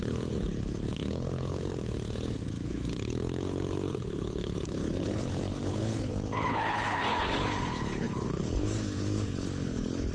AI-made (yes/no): yes